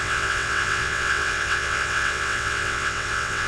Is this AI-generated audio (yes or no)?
yes